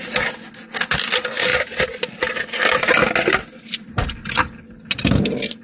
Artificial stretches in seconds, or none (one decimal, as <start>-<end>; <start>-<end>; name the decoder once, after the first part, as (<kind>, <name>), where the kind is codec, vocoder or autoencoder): none